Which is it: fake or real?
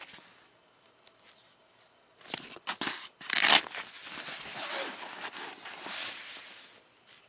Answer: real